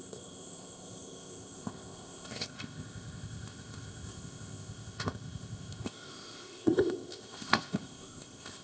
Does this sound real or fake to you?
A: fake